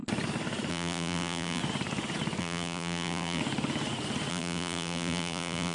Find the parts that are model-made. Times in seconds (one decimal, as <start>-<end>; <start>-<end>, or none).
0.7-1.6; 2.4-3.4; 4.3-5.7